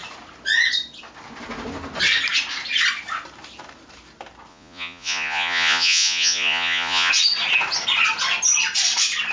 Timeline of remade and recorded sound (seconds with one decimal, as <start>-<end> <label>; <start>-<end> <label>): 0.0-4.5 recorded; 4.5-7.1 remade; 7.1-9.3 recorded